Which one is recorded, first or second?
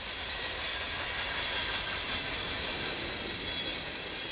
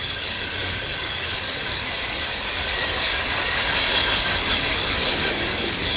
first